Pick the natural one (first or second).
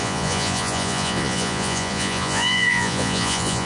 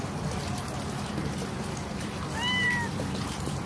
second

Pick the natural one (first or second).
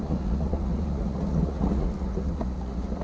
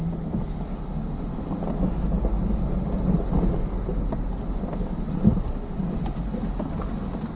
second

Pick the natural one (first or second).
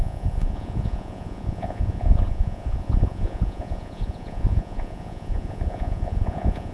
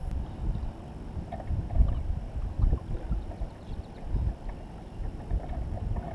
second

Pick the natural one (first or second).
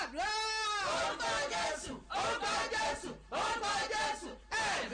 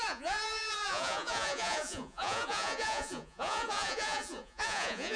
first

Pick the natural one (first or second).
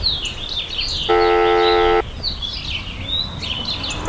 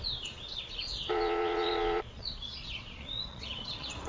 first